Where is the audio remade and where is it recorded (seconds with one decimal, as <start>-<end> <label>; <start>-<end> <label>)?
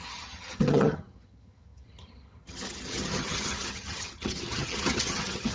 0.0-5.5 remade